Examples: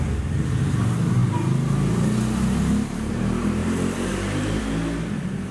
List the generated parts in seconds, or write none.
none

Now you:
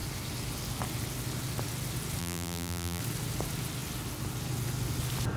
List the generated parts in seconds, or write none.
2.2-3.0

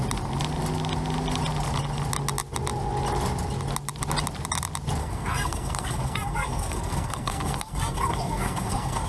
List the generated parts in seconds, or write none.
5.0-9.1

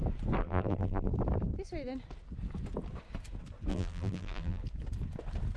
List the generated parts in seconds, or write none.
0.4-1.1; 3.7-4.6

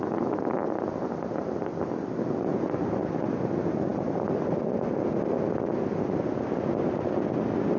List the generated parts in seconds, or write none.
none

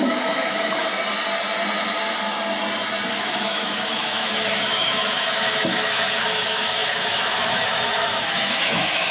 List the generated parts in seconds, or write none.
0.0-0.8; 3.1-9.1

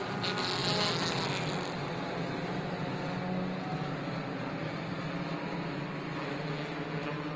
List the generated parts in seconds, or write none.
none